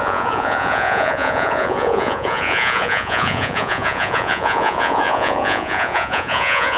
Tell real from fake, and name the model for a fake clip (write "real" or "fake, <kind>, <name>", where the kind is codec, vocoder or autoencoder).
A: fake, vocoder, Vocos